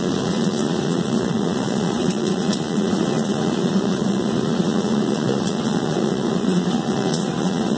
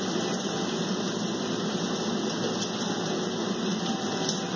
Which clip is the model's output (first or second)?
first